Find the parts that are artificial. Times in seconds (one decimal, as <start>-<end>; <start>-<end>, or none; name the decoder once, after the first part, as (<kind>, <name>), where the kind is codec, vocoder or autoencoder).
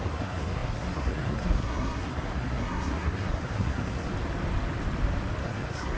0.0-4.1 (codec, SNAC); 5.4-6.0